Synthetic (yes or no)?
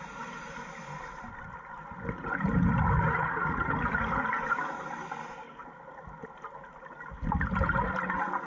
no